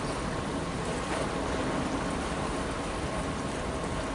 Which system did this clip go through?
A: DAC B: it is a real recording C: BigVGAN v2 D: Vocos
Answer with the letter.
B